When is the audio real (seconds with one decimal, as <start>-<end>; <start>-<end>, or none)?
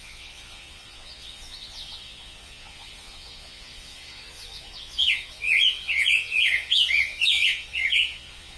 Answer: none